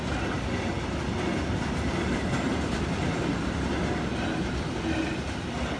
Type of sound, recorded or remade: recorded